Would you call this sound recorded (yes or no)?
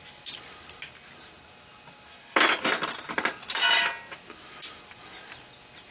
yes